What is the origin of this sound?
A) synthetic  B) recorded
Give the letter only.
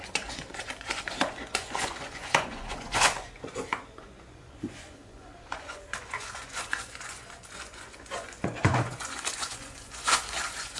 A